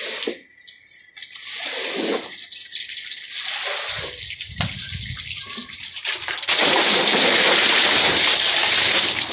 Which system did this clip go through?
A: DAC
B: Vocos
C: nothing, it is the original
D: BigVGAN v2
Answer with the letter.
C